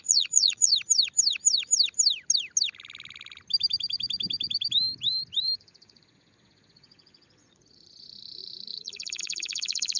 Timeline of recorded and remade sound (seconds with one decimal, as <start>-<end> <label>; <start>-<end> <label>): 0.0-0.7 remade; 0.7-5.6 recorded; 5.6-10.0 remade